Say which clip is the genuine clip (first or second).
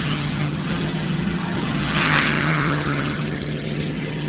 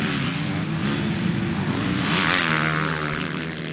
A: second